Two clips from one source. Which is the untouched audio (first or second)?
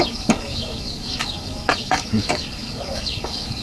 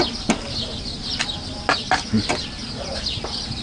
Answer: second